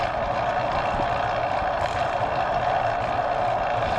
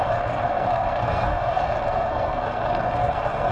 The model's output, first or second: second